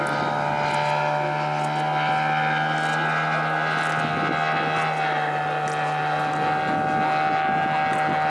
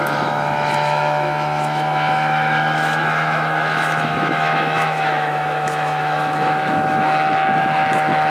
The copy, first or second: second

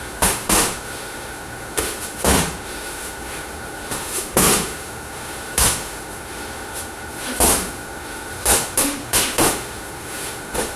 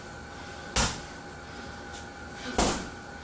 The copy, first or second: first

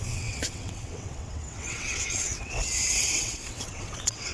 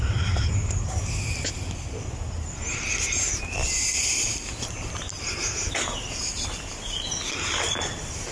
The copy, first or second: first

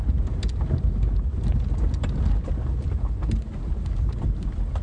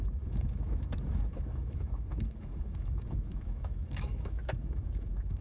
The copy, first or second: second